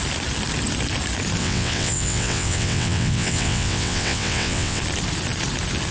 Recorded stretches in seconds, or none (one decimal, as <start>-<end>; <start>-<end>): 0.0-1.4; 4.8-5.9

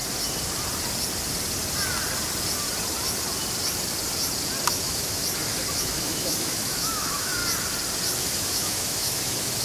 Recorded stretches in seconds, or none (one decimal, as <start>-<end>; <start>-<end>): 0.0-4.7; 5.2-5.8; 7.4-8.2